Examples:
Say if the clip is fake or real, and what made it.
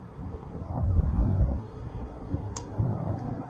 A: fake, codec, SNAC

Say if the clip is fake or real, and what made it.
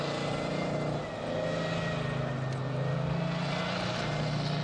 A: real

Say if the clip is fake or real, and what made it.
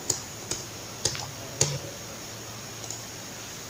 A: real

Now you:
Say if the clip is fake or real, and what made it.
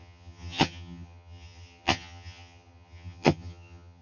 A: fake, vocoder, HiFi-GAN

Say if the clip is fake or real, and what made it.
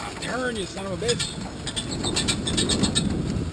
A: real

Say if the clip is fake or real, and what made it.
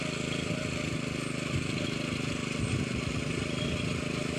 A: real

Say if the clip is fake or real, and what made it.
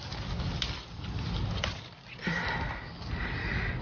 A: real